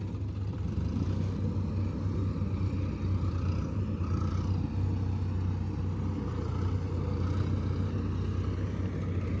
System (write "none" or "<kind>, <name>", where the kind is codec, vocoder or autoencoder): none